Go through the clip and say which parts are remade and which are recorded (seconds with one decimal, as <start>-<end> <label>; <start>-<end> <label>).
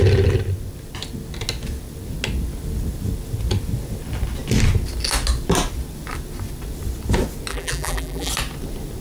0.0-7.5 recorded; 7.5-8.3 remade; 8.3-9.0 recorded